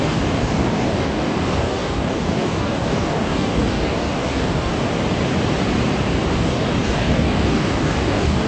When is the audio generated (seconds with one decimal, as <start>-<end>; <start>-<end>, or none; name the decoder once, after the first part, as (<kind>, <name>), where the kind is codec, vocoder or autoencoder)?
0.0-4.7 (codec, DAC); 6.3-8.5